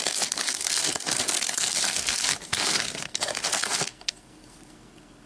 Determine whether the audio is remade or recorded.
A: remade